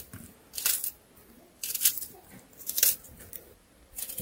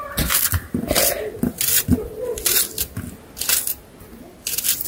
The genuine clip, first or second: second